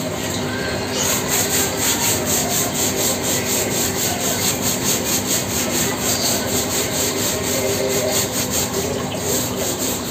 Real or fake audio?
fake